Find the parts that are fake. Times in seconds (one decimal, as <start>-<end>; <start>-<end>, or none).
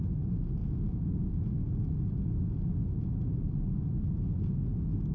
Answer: none